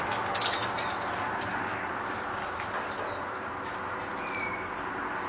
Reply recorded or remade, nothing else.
recorded